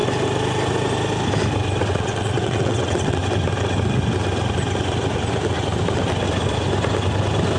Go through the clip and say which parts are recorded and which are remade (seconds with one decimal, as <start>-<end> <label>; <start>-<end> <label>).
0.0-1.8 recorded; 1.8-3.2 remade; 3.2-7.6 recorded